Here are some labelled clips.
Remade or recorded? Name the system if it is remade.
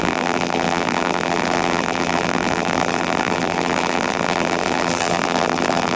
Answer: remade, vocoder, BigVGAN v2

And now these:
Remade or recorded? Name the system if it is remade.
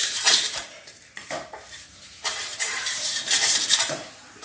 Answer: remade, vocoder, BigVGAN v2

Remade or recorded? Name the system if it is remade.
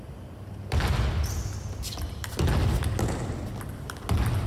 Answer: recorded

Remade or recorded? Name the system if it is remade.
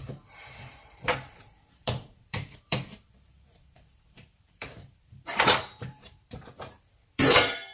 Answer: remade, vocoder, BigVGAN v2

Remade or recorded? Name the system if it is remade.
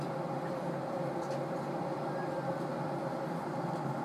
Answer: recorded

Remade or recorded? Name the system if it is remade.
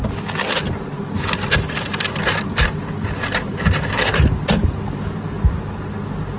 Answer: recorded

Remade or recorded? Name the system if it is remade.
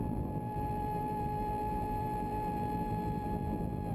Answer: remade, vocoder, BigVGAN v2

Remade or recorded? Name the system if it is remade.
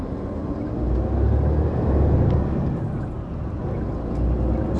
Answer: recorded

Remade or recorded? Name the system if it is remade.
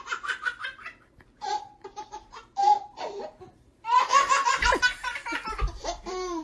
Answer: remade, vocoder, BigVGAN v2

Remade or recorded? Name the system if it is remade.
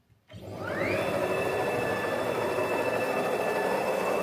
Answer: remade, vocoder, BigVGAN v2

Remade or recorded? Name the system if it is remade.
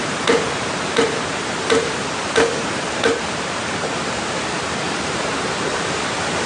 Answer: remade, vocoder, BigVGAN v2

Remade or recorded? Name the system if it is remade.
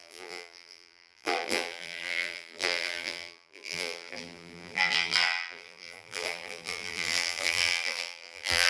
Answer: remade, vocoder, BigVGAN v2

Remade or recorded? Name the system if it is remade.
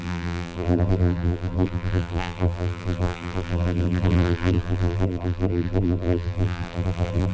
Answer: remade, vocoder, BigVGAN v2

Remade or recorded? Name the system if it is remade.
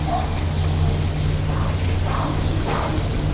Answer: recorded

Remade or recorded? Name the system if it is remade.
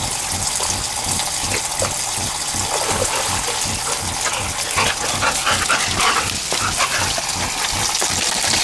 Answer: recorded